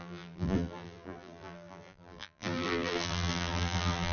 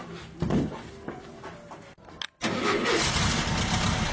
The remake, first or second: first